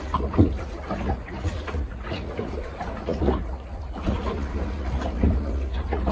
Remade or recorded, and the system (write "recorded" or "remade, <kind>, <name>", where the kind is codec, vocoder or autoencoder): remade, vocoder, Vocos